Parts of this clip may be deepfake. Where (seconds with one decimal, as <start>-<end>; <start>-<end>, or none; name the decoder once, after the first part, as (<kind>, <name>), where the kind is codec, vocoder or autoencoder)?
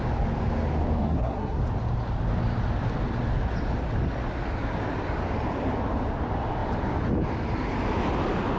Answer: 1.0-1.6 (codec, SNAC)